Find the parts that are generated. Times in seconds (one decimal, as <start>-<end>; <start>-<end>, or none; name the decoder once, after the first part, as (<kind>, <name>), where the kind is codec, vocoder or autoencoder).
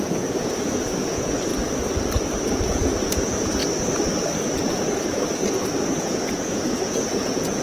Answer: 0.0-1.5 (vocoder, Vocos); 2.5-3.6; 6.0-7.6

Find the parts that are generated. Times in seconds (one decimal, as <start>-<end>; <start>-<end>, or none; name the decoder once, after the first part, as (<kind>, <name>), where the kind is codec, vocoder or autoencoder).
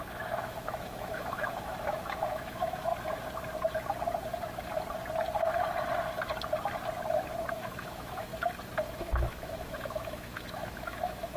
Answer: 0.0-2.9 (autoencoder, DAC-VAE); 7.5-8.3; 8.9-11.4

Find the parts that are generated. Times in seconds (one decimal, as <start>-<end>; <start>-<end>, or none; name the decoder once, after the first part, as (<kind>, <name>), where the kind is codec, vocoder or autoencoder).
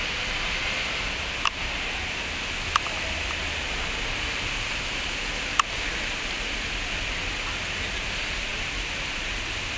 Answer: none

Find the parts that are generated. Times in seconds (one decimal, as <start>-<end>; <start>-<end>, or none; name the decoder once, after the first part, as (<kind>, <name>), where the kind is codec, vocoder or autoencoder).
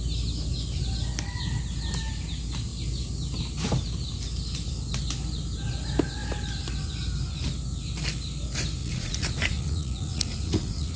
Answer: 8.8-11.0 (vocoder, Vocos)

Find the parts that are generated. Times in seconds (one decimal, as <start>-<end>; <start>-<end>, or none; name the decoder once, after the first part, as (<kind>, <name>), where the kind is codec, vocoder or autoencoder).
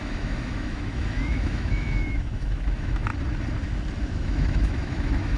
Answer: 0.0-3.1 (autoencoder, DAC-VAE); 4.0-5.4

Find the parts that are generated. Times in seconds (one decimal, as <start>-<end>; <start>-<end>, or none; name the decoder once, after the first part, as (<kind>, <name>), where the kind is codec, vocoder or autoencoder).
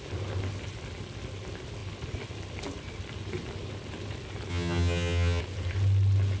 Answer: 4.5-5.4 (vocoder, HiFi-GAN)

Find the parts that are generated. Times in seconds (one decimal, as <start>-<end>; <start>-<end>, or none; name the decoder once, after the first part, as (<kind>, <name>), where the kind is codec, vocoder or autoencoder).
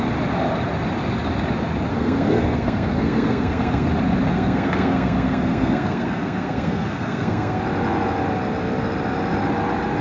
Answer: 1.9-3.9 (codec, SNAC); 4.3-7.6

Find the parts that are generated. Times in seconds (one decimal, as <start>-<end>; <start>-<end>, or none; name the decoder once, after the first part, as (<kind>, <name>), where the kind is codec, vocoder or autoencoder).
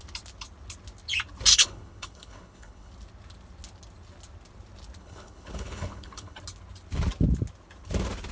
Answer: 1.5-2.9 (codec, HILCodec); 5.0-6.4